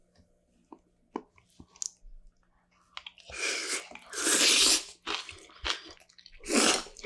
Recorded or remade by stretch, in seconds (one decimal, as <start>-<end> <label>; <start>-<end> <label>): 0.0-7.1 recorded